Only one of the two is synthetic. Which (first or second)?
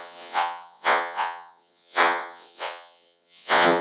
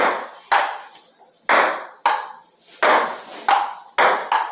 first